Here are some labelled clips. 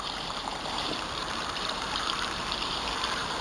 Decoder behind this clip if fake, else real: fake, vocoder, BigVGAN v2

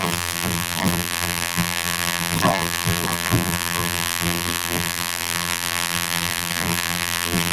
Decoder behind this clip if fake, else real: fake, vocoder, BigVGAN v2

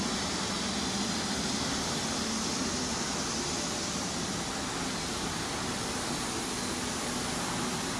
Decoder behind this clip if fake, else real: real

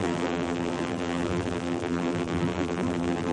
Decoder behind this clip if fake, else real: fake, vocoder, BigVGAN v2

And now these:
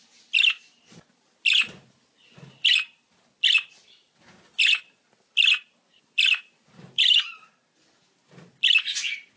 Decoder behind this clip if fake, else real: real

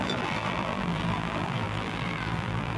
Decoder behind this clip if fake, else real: fake, vocoder, BigVGAN v2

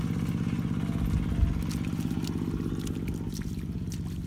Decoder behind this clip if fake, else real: real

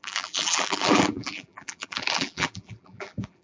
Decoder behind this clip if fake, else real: fake, vocoder, BigVGAN v2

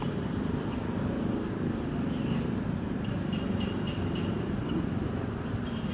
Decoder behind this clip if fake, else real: fake, vocoder, BigVGAN v2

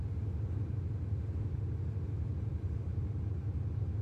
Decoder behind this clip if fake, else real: real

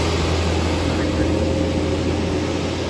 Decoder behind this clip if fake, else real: real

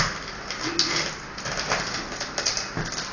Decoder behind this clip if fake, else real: real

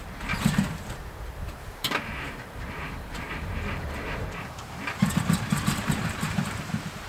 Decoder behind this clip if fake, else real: fake, vocoder, BigVGAN v2